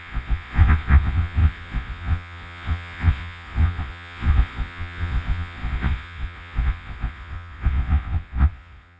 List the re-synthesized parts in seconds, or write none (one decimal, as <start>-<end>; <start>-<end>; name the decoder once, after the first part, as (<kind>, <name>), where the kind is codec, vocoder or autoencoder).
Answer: 0.0-9.0 (vocoder, Vocos)